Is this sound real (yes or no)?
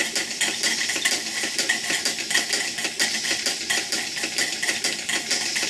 yes